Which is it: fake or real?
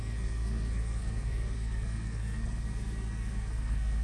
fake